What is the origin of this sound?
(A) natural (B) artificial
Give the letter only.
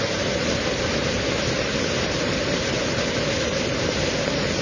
A